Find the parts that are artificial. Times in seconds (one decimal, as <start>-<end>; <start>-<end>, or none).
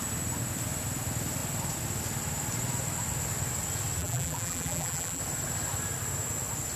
4.0-5.2